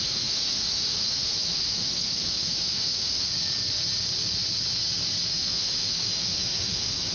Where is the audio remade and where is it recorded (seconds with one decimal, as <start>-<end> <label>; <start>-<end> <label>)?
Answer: 0.0-3.3 remade; 3.3-5.3 recorded; 5.3-7.1 remade